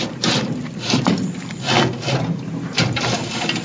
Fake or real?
real